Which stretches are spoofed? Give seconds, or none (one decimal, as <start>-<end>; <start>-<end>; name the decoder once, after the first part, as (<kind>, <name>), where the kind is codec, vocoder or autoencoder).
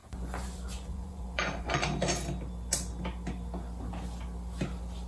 0.0-1.8 (vocoder, Vocos)